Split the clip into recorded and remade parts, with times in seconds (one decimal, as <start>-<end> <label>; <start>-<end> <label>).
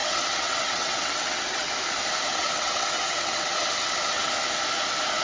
0.0-1.7 remade; 1.7-2.3 recorded; 2.3-4.3 remade; 4.3-5.2 recorded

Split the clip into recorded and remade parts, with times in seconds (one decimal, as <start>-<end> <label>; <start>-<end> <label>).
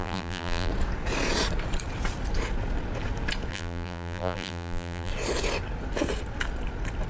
0.0-0.7 remade; 0.7-3.5 recorded; 3.5-5.1 remade; 5.1-7.1 recorded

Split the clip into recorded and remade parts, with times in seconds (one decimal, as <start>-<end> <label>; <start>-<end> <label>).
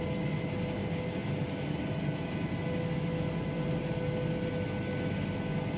0.0-5.8 recorded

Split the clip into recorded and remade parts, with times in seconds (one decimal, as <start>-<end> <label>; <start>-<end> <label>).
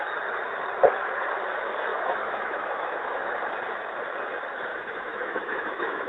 0.0-1.9 recorded; 1.9-3.4 remade; 3.4-4.7 recorded; 4.7-6.1 remade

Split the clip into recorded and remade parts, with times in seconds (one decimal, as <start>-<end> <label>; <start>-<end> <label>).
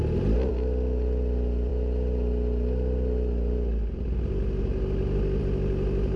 0.0-6.2 recorded